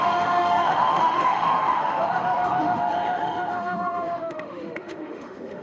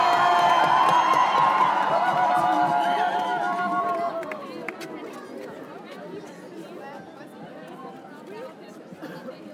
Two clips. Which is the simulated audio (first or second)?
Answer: first